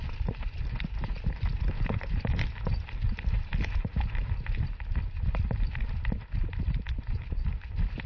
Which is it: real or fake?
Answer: real